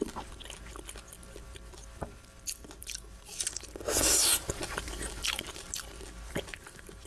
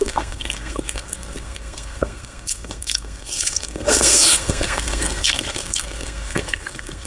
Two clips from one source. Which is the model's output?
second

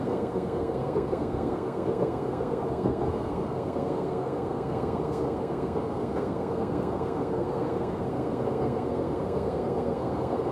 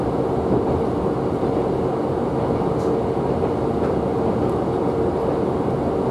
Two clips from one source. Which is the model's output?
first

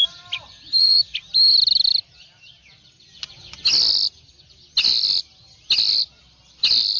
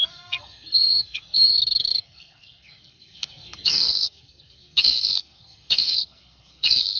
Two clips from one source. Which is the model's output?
second